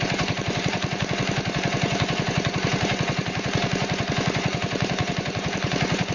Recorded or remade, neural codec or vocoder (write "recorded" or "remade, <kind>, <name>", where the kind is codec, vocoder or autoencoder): remade, vocoder, Vocos